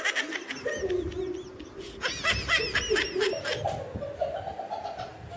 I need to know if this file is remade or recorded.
recorded